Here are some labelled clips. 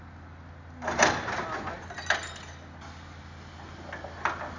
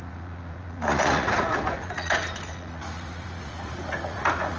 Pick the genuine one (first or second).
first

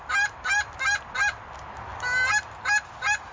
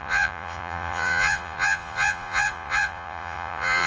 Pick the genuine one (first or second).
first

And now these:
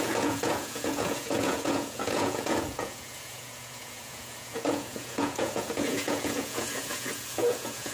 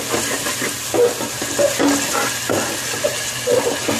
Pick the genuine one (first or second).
second